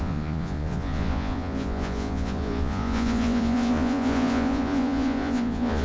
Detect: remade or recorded remade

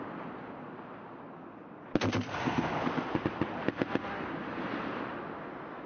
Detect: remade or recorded recorded